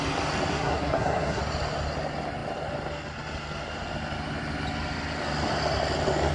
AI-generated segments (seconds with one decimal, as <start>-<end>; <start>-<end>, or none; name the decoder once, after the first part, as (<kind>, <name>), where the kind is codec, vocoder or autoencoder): 0.5-1.4 (codec, SNAC)